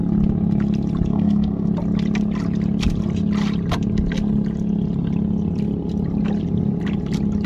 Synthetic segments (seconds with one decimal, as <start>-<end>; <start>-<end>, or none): 1.1-1.7